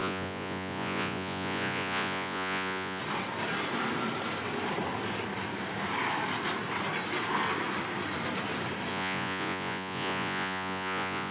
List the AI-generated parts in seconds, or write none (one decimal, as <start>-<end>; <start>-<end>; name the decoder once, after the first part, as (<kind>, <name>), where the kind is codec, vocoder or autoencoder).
0.0-3.0 (vocoder, Vocos); 8.9-11.3